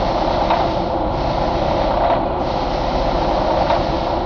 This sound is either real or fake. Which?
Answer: real